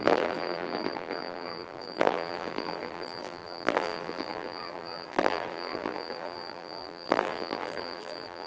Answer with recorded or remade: remade